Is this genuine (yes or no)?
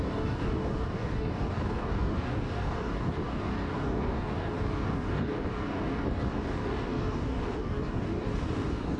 no